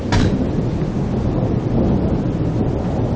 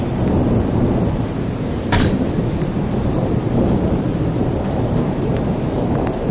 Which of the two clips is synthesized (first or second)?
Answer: second